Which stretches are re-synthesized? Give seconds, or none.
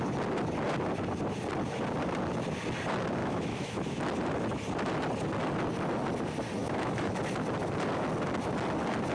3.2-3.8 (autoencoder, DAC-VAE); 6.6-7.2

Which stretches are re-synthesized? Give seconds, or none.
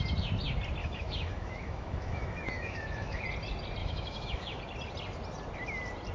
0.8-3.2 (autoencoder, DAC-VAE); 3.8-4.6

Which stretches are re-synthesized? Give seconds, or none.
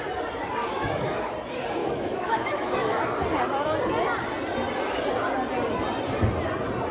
0.6-1.3 (autoencoder, DAC-VAE); 1.8-3.0